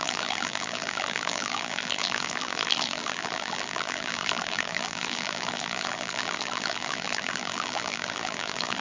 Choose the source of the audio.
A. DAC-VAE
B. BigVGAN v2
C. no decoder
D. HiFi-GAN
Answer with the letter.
B